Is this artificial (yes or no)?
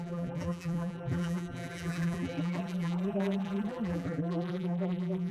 yes